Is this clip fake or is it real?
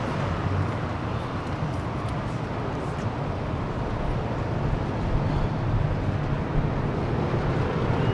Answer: real